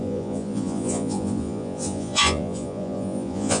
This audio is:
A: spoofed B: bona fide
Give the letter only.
A